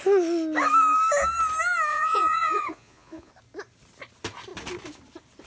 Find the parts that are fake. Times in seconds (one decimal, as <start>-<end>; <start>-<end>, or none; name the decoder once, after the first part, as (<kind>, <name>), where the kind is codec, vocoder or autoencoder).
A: 1.9-3.3 (vocoder, Vocos)